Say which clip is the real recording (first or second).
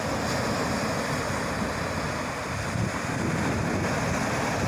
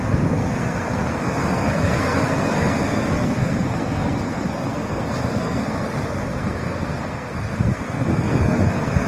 first